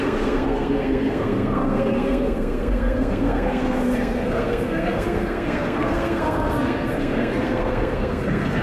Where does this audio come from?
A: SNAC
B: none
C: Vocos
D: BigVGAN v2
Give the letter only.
A